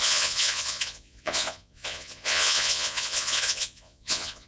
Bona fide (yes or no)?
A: no